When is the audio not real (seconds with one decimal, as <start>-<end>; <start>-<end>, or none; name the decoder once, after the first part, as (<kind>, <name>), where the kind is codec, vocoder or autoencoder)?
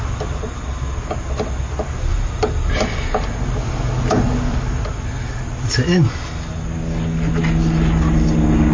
none